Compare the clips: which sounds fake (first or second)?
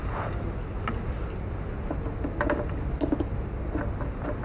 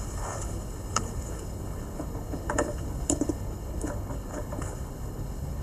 second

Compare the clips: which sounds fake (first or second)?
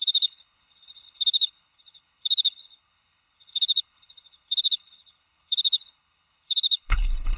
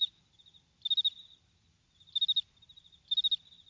first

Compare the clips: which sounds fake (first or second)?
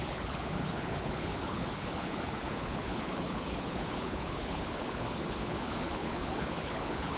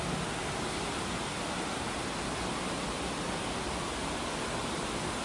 first